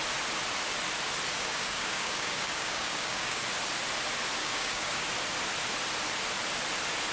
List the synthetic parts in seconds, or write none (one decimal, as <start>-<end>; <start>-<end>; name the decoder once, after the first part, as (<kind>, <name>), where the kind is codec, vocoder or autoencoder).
1.3-3.4 (codec, DAC); 4.4-5.1